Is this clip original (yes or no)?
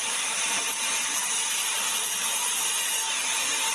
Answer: yes